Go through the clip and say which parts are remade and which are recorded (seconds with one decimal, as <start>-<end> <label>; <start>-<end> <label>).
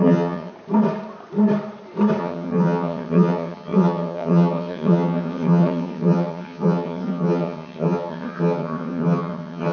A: 0.0-0.5 remade; 0.5-2.2 recorded; 2.2-9.7 remade